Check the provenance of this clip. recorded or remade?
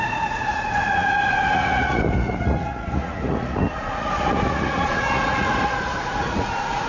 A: remade